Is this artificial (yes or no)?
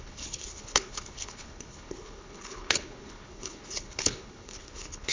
yes